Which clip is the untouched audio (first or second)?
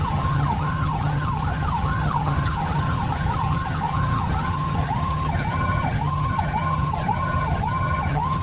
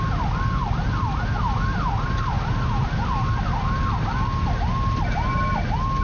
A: second